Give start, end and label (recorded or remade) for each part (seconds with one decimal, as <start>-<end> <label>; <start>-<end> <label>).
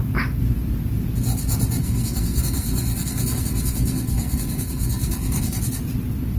0.0-1.8 recorded; 1.8-5.6 remade; 5.6-6.4 recorded